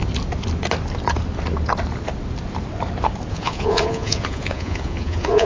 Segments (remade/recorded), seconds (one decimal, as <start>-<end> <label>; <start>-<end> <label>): 0.0-3.3 recorded; 3.3-5.5 remade